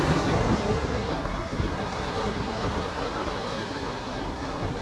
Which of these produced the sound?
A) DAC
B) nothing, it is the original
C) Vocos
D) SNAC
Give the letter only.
D